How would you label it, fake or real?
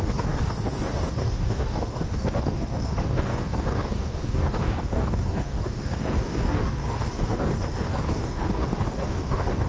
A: fake